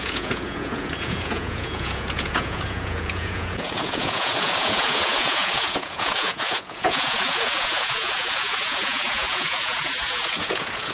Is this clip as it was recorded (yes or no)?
no